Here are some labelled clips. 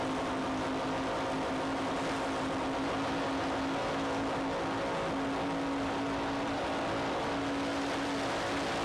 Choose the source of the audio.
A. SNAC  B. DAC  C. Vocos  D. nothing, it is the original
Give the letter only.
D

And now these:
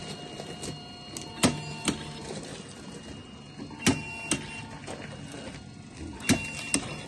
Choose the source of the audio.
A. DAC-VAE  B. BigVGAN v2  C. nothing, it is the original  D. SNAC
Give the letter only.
C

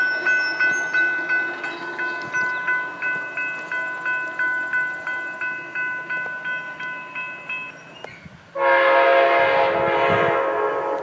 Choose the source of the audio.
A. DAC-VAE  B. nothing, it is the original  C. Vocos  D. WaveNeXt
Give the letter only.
B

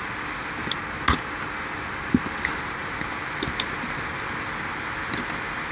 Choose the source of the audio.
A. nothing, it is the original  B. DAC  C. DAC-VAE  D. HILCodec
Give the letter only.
A